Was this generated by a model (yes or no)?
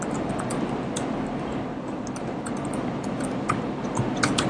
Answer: no